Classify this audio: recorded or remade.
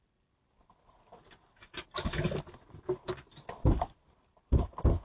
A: recorded